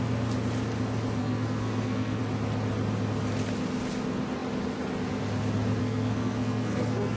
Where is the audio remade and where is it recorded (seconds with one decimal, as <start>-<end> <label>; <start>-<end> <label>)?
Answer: 0.0-1.2 recorded; 1.2-2.2 remade; 2.2-5.8 recorded; 5.8-7.2 remade